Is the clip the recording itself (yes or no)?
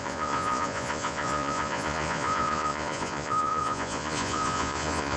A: no